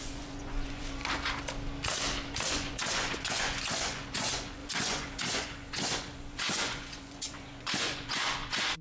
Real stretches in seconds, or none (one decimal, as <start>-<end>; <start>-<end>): 1.0-2.5